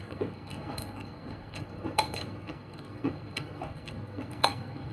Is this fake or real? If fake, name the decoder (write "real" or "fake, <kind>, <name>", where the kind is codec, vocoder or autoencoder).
fake, codec, SNAC